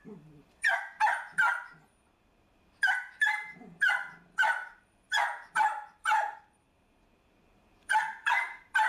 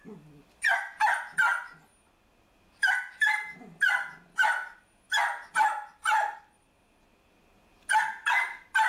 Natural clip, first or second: second